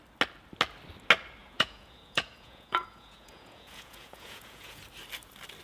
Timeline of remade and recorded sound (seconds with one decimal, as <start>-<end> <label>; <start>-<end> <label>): 0.0-1.4 recorded; 1.4-4.8 remade; 4.8-5.6 recorded